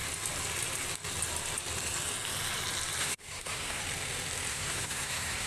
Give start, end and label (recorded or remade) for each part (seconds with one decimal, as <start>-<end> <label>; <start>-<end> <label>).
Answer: 0.0-3.0 recorded; 3.0-3.8 remade; 3.8-4.5 recorded; 4.5-5.5 remade